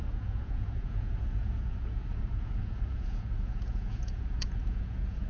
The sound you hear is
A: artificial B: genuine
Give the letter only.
A